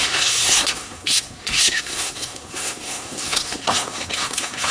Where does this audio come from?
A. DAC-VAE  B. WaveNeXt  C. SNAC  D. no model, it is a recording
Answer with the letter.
C